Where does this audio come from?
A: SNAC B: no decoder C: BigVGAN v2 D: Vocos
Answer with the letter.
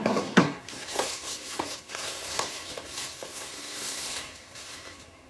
A